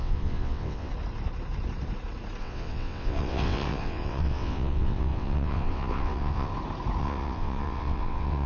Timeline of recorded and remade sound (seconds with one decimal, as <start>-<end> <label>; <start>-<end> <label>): 0.0-0.9 remade; 0.9-2.4 recorded; 2.4-6.5 remade; 6.5-7.0 recorded; 7.0-8.5 remade